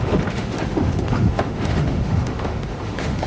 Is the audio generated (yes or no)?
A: yes